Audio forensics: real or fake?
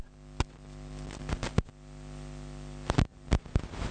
real